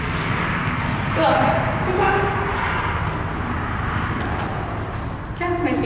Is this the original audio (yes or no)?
yes